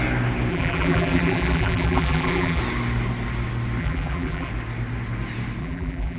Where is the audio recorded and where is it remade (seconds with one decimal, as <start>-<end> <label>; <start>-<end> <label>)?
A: 0.0-0.5 recorded; 0.5-2.6 remade; 2.6-3.8 recorded; 3.8-4.5 remade; 4.5-5.6 recorded; 5.6-6.2 remade